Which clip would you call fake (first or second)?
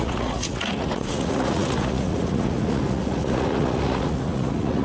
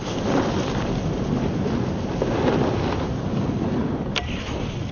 first